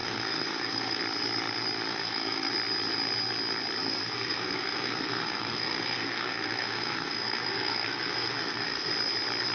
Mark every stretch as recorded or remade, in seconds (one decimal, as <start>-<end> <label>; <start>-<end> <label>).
0.0-1.0 remade; 1.0-1.9 recorded; 1.9-2.5 remade; 2.5-3.8 recorded; 3.8-8.9 remade; 8.9-9.5 recorded